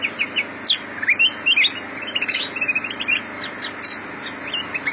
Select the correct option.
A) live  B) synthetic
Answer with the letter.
A